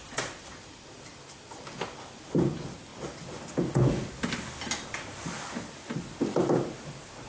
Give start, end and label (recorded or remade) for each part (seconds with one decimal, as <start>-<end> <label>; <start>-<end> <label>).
0.0-7.3 recorded